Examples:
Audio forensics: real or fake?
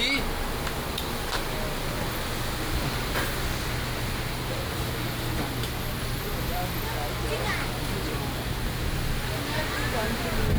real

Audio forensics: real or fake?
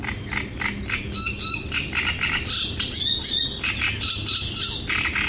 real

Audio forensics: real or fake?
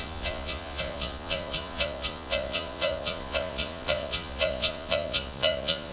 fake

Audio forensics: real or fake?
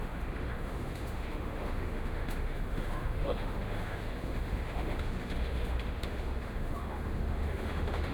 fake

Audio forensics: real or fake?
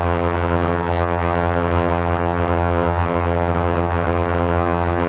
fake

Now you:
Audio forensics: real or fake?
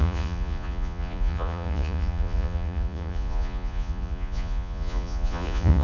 fake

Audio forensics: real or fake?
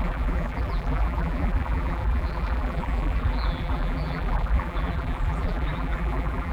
fake